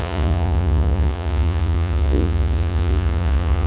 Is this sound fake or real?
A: fake